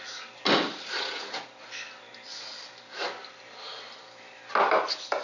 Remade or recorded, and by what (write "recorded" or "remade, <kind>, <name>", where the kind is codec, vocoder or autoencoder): recorded